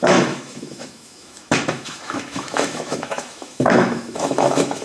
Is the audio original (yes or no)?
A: no